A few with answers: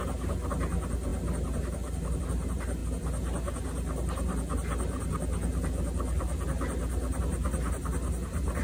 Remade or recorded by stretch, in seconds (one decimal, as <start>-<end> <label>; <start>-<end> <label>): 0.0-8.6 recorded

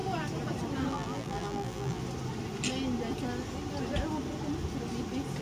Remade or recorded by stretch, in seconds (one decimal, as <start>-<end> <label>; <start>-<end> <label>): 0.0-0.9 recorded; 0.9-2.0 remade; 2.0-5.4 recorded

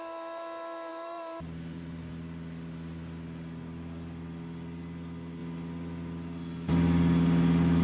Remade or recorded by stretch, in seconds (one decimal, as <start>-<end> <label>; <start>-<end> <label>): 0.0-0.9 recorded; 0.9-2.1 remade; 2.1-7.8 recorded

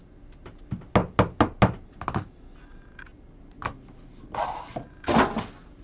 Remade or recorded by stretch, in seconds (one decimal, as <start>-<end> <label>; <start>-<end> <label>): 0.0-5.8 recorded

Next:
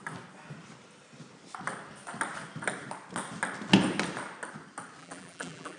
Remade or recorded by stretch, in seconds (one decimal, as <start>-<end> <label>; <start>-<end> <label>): 0.0-5.0 recorded; 5.0-5.8 remade

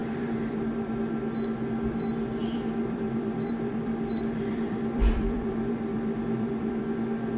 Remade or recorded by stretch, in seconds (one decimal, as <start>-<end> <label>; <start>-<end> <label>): 0.0-1.0 remade; 1.0-2.4 recorded; 2.4-6.8 remade; 6.8-7.4 recorded